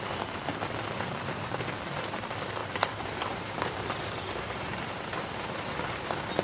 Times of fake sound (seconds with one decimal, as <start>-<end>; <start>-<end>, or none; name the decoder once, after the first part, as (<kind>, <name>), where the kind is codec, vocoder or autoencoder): 2.6-6.0 (vocoder, BigVGAN v2)

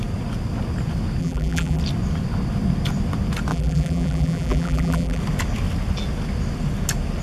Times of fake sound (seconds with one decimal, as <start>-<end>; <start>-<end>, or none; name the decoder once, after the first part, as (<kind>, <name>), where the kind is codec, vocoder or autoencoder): 1.2-1.8 (vocoder, BigVGAN v2); 3.5-5.2

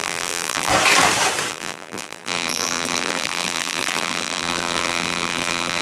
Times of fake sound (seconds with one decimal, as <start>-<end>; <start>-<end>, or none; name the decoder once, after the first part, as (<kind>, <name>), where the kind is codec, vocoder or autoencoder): 0.0-0.7 (vocoder, BigVGAN v2); 1.5-5.8

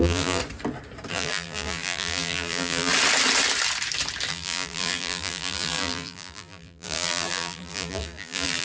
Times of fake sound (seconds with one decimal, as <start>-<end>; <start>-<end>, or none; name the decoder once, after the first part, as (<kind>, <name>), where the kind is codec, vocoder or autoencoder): 0.0-0.4 (vocoder, BigVGAN v2); 1.1-2.9; 4.3-8.6

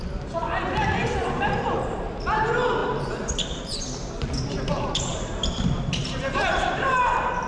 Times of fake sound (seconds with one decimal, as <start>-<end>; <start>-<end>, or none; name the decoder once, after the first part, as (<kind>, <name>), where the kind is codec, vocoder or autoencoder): 1.0-2.1 (vocoder, BigVGAN v2); 5.1-7.0

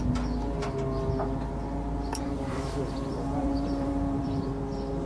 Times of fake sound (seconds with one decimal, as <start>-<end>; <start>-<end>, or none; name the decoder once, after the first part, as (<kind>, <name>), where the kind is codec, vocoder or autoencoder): 2.1-4.5 (vocoder, BigVGAN v2)

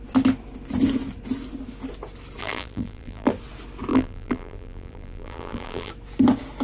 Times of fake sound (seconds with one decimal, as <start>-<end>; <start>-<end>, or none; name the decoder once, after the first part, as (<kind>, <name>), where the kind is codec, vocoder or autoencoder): 2.4-3.3 (vocoder, BigVGAN v2); 3.9-5.9

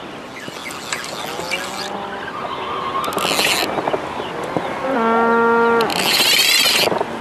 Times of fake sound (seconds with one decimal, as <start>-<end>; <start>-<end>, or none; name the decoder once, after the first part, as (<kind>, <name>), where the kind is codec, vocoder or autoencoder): none